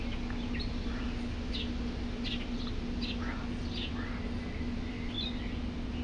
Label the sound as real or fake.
real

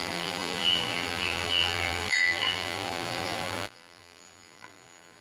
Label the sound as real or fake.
fake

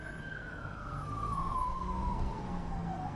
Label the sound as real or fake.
fake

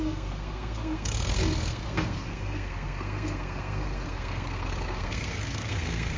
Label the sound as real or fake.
fake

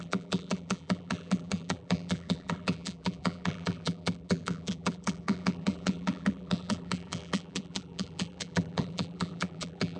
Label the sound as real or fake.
fake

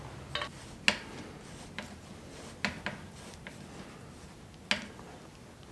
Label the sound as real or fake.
real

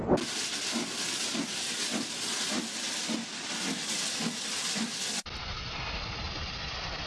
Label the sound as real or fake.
real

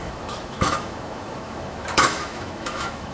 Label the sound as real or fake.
fake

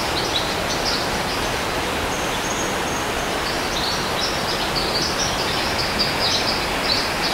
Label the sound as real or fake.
real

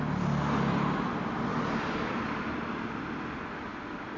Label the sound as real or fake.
real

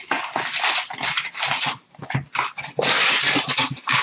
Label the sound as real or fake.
real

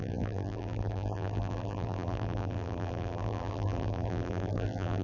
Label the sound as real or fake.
fake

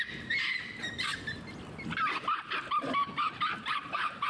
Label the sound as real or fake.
real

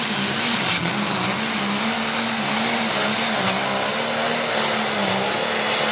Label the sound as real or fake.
real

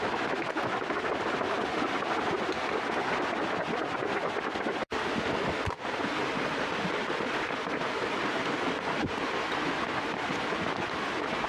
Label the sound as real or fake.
real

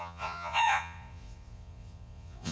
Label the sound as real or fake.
fake